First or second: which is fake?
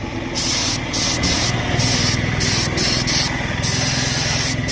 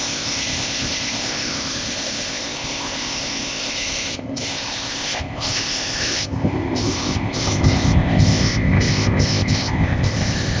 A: second